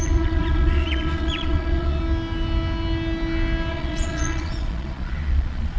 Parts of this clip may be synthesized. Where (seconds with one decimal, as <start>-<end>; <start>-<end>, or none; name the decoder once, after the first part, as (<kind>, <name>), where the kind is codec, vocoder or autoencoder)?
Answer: 0.0-2.0 (vocoder, Vocos); 3.7-5.8